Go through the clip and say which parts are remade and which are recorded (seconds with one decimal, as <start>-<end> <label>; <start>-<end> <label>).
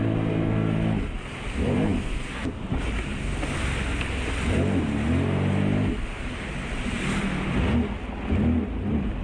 0.0-9.2 recorded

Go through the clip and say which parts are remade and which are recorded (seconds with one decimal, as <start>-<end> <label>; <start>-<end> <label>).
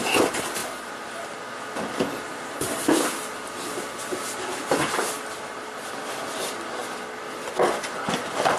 0.0-8.6 recorded